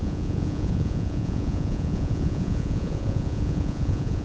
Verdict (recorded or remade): remade